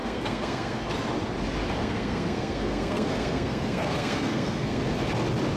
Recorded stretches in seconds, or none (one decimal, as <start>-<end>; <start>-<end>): 0.8-1.8; 4.8-5.6